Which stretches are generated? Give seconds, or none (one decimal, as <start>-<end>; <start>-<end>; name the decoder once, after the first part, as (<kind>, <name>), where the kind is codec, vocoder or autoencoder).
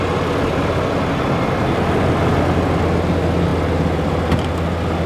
none